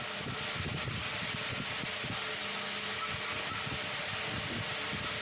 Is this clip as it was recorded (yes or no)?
yes